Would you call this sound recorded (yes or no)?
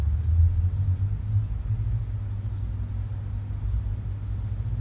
yes